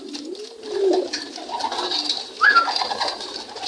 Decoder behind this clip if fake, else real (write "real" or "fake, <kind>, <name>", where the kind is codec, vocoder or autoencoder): real